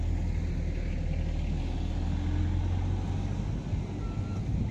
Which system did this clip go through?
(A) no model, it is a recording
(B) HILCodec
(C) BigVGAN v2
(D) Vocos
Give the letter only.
A